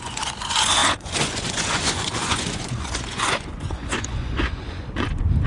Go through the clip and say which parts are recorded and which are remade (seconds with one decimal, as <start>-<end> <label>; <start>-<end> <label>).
0.0-5.5 remade